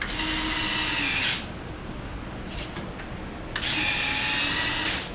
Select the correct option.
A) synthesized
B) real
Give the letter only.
B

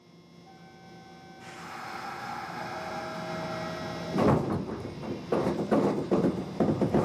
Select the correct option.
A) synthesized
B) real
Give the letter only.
B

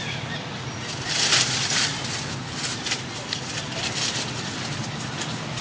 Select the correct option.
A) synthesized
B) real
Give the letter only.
B